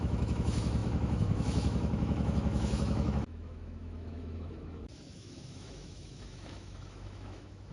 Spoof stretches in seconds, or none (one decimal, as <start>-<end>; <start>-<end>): 0.0-7.7